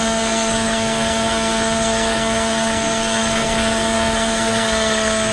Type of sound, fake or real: fake